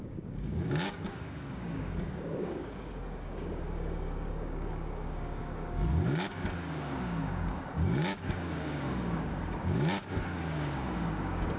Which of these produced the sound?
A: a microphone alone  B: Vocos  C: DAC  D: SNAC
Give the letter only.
C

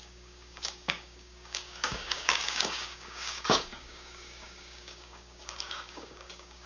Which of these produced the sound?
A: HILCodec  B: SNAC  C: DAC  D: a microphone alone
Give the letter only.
C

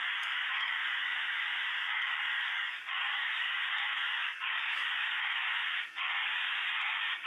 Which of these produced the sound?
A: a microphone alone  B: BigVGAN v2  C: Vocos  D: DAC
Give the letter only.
D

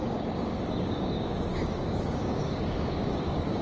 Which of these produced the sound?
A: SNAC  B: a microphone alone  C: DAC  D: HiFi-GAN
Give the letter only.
C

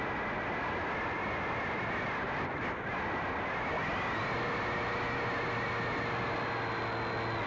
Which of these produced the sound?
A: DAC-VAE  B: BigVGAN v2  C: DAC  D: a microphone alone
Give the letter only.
D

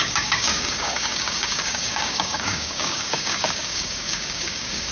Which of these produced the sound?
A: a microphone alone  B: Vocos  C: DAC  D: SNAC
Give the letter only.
C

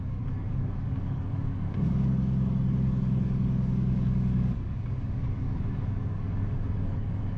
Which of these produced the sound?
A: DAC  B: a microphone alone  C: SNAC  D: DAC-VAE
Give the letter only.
A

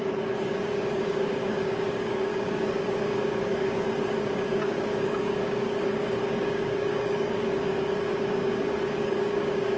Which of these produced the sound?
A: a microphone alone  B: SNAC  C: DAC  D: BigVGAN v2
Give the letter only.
C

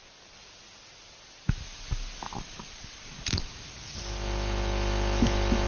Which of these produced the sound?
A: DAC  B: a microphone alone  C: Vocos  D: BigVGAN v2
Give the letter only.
B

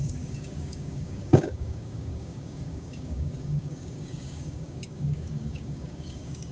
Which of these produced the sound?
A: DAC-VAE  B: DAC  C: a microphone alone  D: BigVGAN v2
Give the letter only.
B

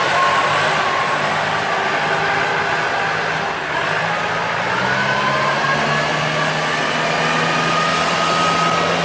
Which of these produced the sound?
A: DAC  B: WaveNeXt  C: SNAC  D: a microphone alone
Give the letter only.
D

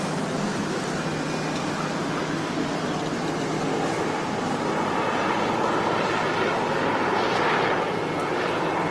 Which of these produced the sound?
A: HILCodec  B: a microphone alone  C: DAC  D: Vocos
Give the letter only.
B